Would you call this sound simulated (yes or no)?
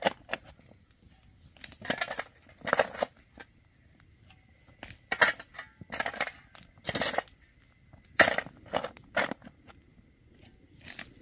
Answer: no